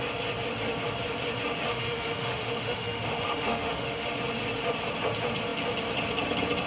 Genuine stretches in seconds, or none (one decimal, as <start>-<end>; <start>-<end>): 0.0-1.7; 4.1-6.7

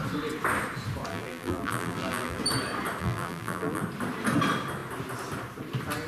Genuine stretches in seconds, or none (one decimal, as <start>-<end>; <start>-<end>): 0.0-1.1; 2.4-3.0; 3.8-6.1

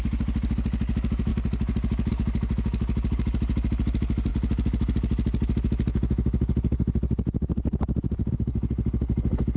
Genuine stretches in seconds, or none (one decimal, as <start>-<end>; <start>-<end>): 0.0-9.6